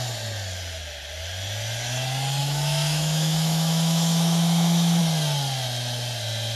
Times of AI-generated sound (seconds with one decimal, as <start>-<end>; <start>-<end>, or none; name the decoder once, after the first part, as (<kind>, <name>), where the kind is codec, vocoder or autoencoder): 2.4-5.0 (autoencoder, DAC-VAE)